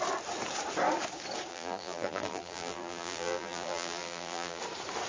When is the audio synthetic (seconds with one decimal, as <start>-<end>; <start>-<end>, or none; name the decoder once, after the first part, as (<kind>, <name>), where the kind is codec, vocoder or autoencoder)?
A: 1.5-4.6 (vocoder, BigVGAN v2)